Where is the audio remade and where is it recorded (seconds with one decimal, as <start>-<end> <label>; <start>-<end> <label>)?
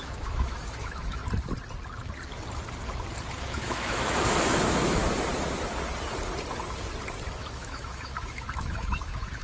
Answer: 0.0-1.2 remade; 1.2-3.4 recorded; 3.4-5.0 remade; 5.0-7.4 recorded; 7.4-9.4 remade